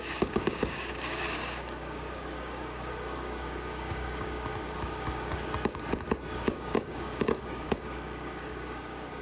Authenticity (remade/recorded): remade